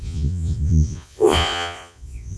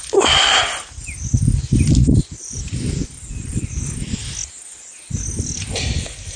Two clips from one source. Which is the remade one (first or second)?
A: first